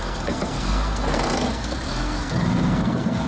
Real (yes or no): no